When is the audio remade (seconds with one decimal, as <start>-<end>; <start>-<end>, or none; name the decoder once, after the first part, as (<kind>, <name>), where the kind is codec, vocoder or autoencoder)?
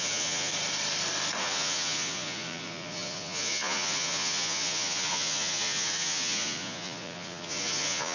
0.0-0.5 (vocoder, Vocos); 1.4-8.1